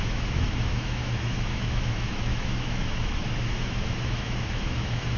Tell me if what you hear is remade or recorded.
remade